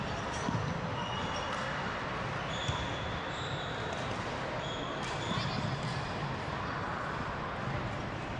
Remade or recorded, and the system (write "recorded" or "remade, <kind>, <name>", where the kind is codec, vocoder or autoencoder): recorded